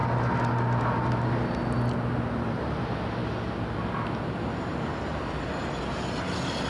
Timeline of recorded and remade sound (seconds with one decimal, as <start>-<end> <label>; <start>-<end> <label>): 0.0-6.7 recorded